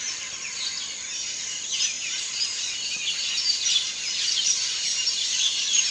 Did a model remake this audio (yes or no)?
no